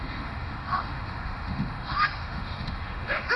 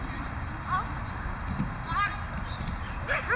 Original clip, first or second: second